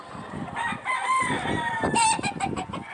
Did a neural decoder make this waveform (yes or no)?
no